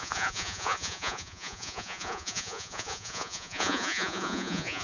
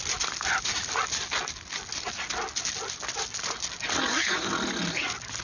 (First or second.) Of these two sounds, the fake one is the first